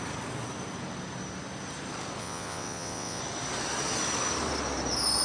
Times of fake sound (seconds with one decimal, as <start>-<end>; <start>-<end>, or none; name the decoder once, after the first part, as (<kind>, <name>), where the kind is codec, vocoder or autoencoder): 2.2-3.2 (vocoder, WaveNeXt)